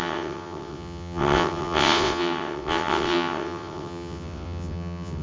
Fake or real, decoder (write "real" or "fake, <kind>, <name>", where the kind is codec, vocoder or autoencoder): fake, vocoder, WaveNeXt